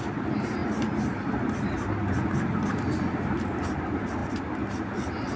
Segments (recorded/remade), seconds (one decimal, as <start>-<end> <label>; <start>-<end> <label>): 0.0-5.4 recorded